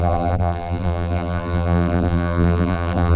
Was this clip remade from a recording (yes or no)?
yes